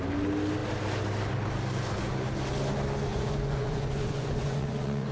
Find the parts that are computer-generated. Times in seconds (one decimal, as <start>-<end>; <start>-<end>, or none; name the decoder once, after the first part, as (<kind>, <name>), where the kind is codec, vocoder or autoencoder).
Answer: 3.1-5.1 (vocoder, Vocos)